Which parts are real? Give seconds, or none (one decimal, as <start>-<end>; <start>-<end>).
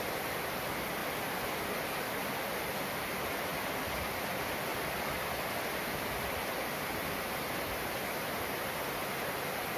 0.0-4.7; 8.9-9.8